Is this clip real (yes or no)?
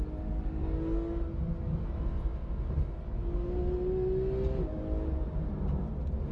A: yes